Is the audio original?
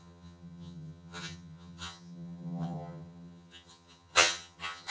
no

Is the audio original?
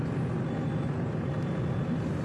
yes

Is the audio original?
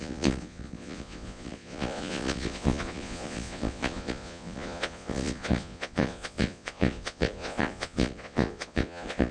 no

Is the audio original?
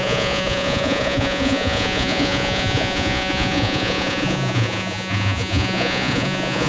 no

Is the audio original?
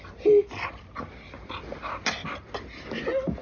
yes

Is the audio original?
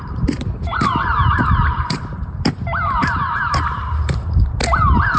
no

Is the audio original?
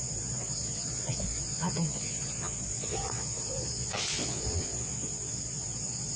no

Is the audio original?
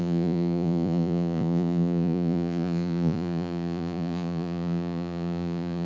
no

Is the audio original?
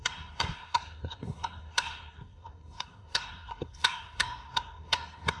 no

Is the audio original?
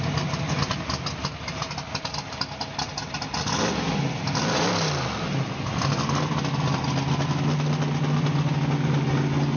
yes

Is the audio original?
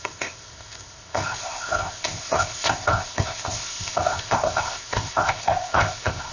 no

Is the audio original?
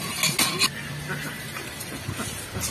yes